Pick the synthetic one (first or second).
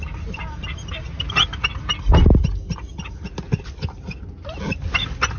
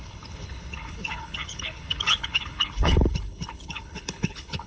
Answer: second